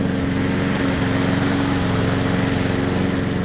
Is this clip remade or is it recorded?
recorded